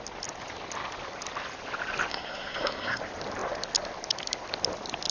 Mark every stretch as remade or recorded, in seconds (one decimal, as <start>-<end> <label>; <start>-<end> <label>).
0.0-2.1 recorded; 2.1-3.0 remade; 3.0-5.1 recorded